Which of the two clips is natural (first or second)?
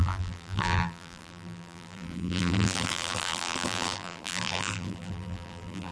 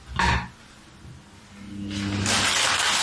second